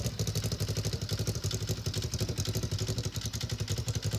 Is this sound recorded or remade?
recorded